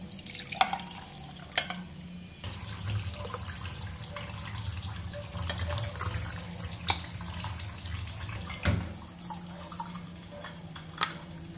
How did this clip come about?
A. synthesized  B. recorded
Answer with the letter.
B